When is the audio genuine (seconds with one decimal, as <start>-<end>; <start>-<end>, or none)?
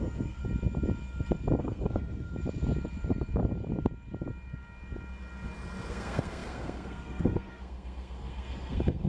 0.4-1.6; 2.3-5.9